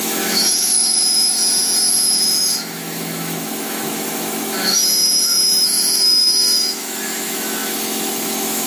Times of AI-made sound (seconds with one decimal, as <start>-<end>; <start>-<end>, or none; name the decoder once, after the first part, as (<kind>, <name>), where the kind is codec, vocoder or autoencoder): 0.0-1.3 (autoencoder, DAC-VAE); 1.9-8.7